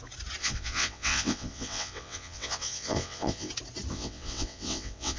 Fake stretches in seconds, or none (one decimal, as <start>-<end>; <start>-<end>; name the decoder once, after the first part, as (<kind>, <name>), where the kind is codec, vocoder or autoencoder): 0.4-3.5 (vocoder, WaveNeXt); 3.9-5.2